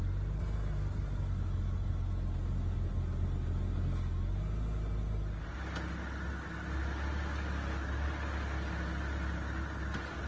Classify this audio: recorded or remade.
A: recorded